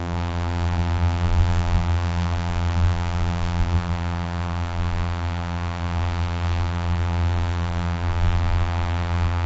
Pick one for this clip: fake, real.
fake